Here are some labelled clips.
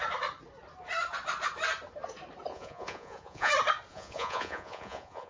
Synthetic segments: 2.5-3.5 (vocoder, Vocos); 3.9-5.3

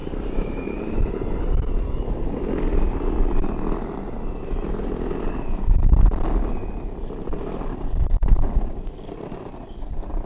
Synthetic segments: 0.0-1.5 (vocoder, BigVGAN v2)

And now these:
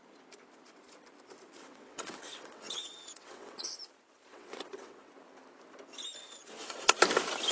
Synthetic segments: 1.6-3.8 (vocoder, WaveNeXt); 4.3-5.1; 6.2-7.0

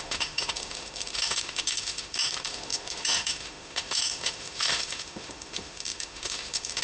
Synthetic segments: 0.0-6.8 (autoencoder, DAC-VAE)

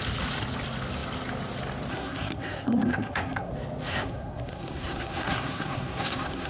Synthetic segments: 1.9-3.5 (codec, SNAC); 3.9-6.5

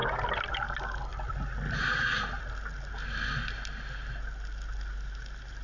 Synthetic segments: none